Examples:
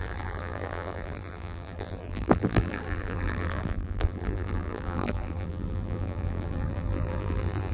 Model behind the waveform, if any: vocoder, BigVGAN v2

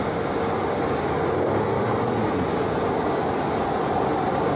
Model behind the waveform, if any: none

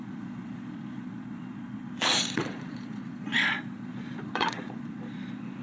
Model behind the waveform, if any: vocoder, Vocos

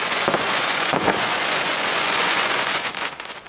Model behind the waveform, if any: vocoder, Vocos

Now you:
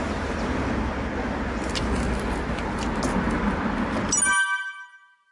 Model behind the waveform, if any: none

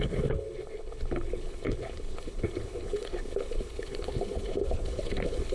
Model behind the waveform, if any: codec, HILCodec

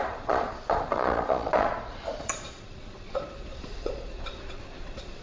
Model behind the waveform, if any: vocoder, Vocos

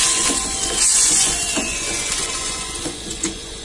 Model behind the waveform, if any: vocoder, Vocos